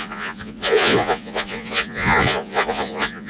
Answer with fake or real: fake